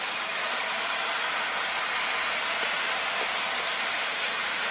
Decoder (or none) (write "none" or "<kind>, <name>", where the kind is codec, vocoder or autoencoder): vocoder, BigVGAN v2